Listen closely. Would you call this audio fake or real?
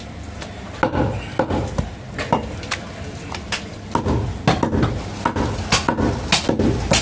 real